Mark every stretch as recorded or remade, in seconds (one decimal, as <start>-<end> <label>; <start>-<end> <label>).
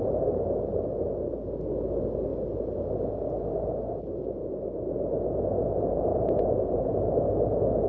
0.0-6.1 recorded; 6.1-6.9 remade; 6.9-7.9 recorded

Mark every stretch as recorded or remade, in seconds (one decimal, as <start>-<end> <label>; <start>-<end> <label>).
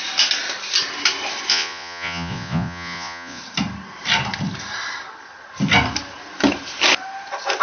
0.0-1.5 recorded; 1.5-3.4 remade; 3.4-7.6 recorded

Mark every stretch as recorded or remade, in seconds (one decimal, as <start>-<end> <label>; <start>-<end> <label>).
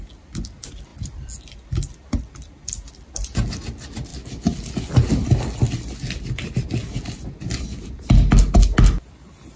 0.0-9.6 recorded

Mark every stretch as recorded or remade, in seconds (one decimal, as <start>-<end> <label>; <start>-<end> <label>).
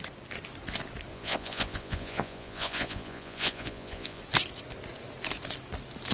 0.0-1.1 recorded; 1.1-4.2 remade; 4.2-6.1 recorded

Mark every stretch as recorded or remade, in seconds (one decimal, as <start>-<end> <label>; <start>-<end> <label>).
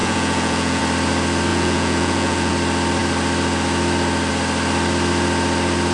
0.0-0.8 remade; 0.8-1.5 recorded; 1.5-2.5 remade; 2.5-5.9 recorded